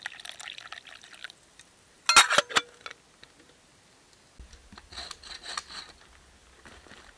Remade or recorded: recorded